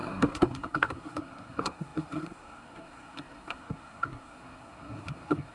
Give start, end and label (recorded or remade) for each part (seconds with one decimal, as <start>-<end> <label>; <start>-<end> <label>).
0.0-5.5 remade